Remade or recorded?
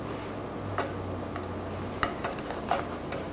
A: recorded